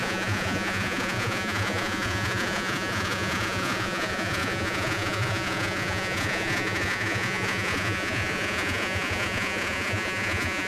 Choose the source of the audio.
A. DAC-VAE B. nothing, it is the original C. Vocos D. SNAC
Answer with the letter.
C